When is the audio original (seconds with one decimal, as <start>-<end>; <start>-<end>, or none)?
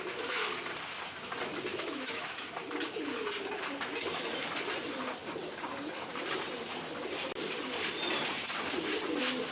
0.0-1.7; 2.5-9.5